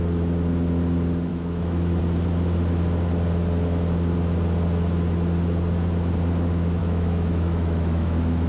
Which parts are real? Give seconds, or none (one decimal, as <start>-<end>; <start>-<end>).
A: 0.0-1.3; 2.0-6.8